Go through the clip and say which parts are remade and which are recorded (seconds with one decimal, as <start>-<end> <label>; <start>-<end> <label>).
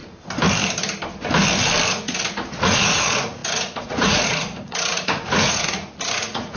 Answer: 0.0-1.9 recorded; 1.9-6.6 remade